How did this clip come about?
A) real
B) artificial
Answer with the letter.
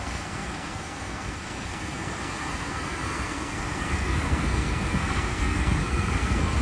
B